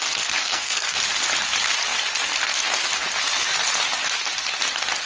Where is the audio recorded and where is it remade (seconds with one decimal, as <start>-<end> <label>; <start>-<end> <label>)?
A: 0.0-0.4 recorded; 0.4-1.0 remade; 1.0-5.1 recorded